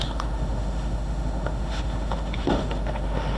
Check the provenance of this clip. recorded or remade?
remade